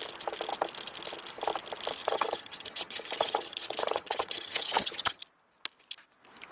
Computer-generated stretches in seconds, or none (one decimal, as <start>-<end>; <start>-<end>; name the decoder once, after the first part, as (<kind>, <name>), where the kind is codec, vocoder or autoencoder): 2.0-5.2 (vocoder, HiFi-GAN)